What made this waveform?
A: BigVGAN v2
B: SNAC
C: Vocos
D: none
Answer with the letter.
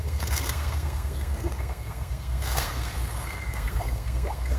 B